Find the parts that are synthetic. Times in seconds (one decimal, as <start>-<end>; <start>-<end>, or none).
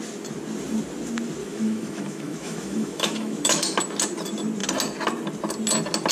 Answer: 1.4-3.8